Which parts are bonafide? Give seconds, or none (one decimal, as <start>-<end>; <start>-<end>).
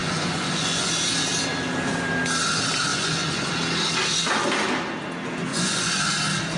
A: 0.9-2.9; 3.5-5.5; 6.0-6.6